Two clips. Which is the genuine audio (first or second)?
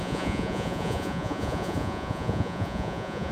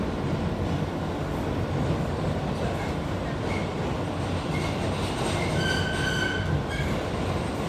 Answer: second